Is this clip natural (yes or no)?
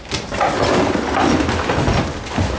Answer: yes